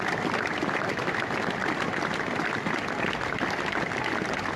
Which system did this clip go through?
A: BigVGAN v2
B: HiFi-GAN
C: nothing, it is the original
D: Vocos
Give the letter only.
C